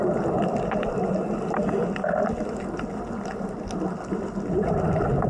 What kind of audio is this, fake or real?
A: real